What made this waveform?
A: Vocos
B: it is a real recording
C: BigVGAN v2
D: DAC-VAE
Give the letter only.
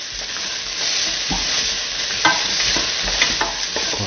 B